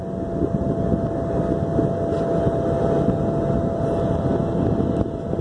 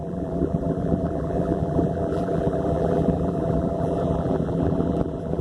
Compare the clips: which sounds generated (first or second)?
second